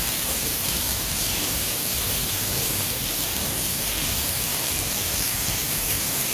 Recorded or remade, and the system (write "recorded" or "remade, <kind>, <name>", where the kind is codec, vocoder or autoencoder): remade, codec, DAC